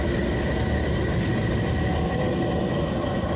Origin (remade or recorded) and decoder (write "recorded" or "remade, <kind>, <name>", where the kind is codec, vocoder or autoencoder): recorded